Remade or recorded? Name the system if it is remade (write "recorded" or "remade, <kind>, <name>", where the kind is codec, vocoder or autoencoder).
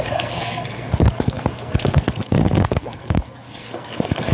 remade, codec, SNAC